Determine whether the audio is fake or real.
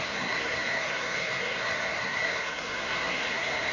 fake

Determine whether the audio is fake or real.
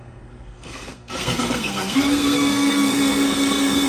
fake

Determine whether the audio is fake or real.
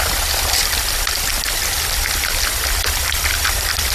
real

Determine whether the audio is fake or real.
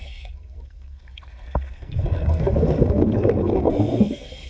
fake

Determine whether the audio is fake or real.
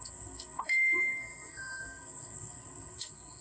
fake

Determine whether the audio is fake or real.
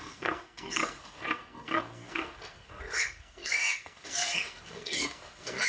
fake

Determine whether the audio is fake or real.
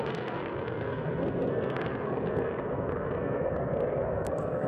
fake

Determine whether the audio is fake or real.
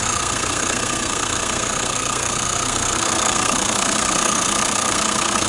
fake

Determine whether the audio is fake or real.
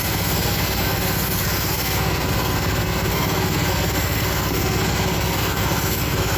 fake